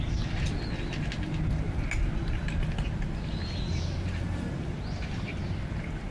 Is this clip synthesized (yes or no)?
no